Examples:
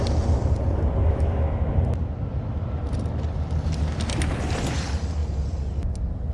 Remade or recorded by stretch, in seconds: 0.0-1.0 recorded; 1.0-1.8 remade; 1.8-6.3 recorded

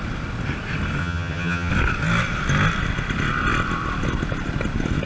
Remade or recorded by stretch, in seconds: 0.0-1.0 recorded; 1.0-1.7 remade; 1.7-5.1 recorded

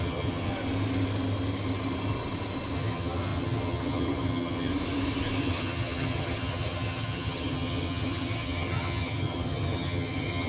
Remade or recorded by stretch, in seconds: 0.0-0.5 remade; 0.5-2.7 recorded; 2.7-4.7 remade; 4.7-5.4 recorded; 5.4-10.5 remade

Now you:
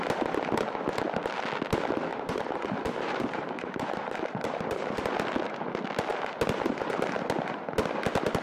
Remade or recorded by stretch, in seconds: 0.0-2.1 recorded; 2.1-5.0 remade; 5.0-8.4 recorded

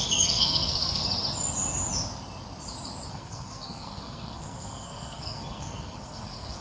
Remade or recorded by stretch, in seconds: 0.0-1.0 remade; 1.0-3.1 recorded; 3.1-6.6 remade

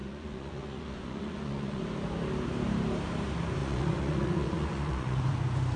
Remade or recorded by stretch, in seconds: 0.0-1.8 remade; 1.8-3.6 recorded; 3.6-5.2 remade; 5.2-5.8 recorded

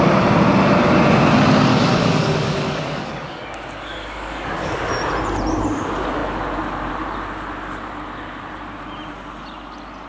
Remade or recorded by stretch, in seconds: 0.0-1.7 recorded; 1.7-4.9 remade; 4.9-10.1 recorded

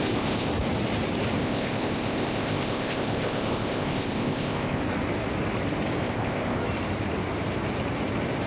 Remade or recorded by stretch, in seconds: 0.0-0.5 remade; 0.5-1.4 recorded; 1.4-4.8 remade; 4.8-6.0 recorded; 6.0-6.6 remade; 6.6-8.5 recorded